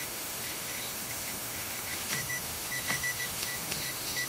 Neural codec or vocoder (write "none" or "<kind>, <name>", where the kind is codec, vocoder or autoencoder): autoencoder, DAC-VAE